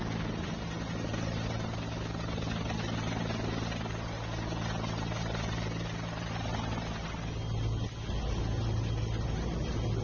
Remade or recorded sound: recorded